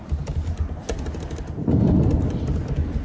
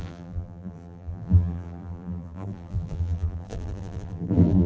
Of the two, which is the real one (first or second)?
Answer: first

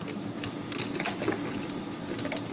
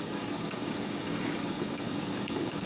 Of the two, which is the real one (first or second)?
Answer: first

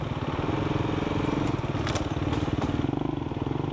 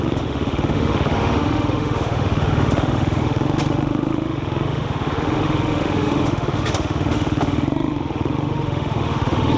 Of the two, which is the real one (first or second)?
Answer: first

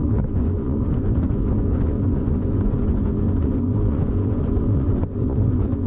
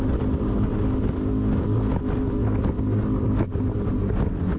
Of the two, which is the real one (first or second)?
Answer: second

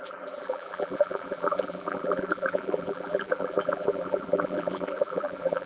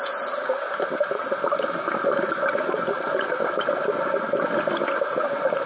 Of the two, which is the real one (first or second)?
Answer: second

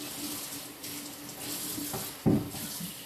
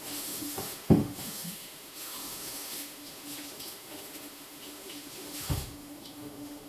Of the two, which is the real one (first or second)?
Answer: first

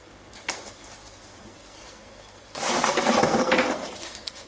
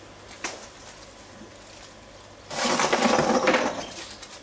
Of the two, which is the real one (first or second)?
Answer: second